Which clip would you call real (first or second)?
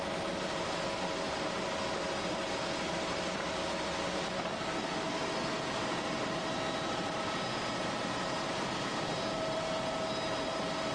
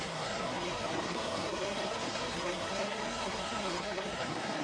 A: first